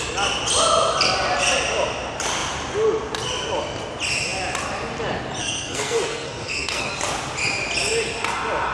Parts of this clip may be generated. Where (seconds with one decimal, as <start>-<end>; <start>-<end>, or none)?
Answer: 5.4-6.9